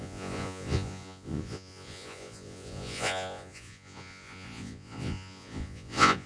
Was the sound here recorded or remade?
remade